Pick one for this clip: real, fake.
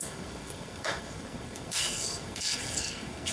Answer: fake